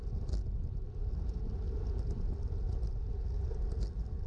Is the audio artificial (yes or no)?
no